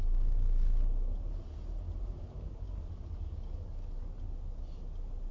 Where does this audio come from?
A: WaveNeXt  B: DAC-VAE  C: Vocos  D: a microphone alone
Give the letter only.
D